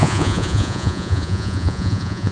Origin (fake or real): fake